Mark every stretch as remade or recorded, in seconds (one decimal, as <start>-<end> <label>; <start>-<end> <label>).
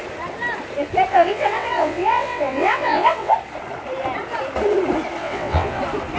0.0-1.1 recorded; 1.1-3.3 remade; 3.3-5.2 recorded; 5.2-5.8 remade; 5.8-6.2 recorded